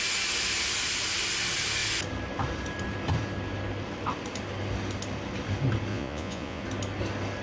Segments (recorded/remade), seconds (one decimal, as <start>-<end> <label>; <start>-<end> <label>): 0.0-5.9 recorded; 5.9-6.6 remade; 6.6-7.4 recorded